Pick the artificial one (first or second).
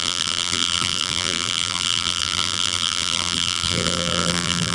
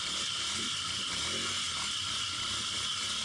first